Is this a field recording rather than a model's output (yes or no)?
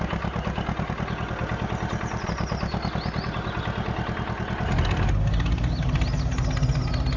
yes